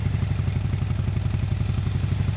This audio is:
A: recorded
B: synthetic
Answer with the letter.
A